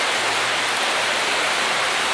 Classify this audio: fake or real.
real